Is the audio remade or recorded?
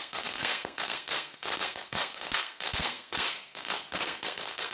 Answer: remade